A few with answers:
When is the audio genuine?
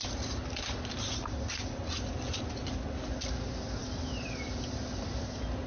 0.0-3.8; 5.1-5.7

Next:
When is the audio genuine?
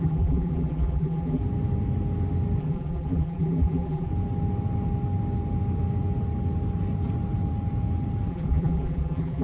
1.4-2.6; 4.1-8.3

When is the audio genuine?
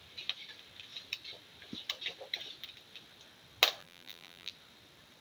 0.0-3.8; 4.5-5.2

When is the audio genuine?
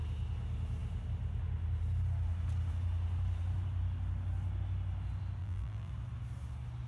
0.0-5.4; 5.9-6.9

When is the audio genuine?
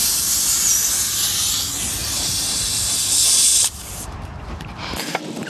0.0-2.0; 2.6-3.5